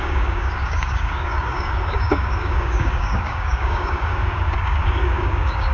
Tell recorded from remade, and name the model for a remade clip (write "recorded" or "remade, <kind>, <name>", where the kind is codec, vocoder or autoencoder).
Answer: remade, codec, DAC